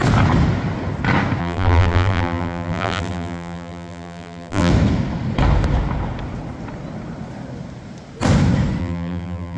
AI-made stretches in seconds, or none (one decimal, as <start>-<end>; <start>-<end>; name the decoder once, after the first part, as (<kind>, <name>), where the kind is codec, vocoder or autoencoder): 1.4-4.7 (vocoder, BigVGAN v2); 8.8-9.6